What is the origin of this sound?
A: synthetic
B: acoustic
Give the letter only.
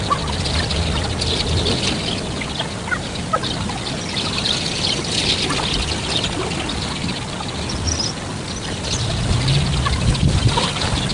B